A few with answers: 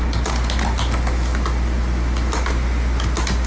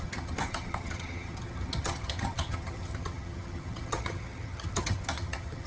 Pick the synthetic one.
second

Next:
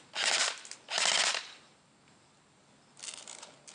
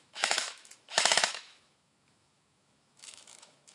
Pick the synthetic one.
second